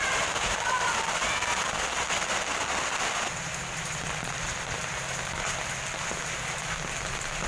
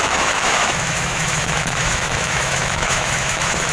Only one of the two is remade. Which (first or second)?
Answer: second